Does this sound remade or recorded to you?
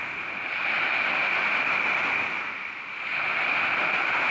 recorded